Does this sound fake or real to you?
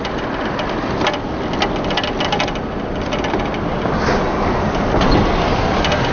real